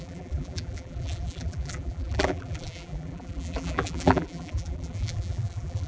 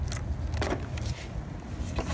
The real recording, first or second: second